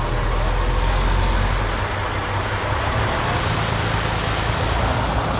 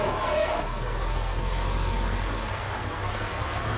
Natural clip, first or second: first